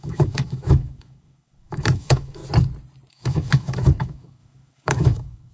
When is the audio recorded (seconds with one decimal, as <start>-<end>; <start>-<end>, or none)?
2.4-3.1